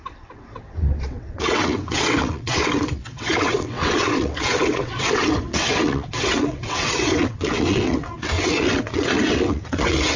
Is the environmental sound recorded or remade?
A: remade